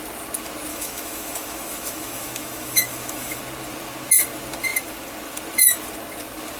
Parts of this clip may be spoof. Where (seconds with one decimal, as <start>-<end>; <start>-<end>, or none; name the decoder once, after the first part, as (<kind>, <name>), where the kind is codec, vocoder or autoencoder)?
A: 0.7-3.4 (autoencoder, DAC-VAE)